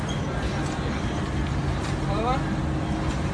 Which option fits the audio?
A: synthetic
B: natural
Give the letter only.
B